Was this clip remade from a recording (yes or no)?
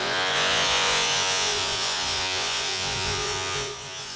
yes